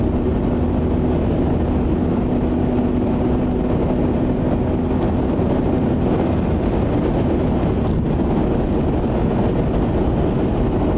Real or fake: real